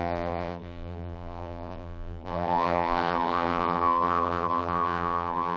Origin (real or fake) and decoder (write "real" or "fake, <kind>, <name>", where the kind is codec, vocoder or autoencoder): fake, vocoder, BigVGAN v2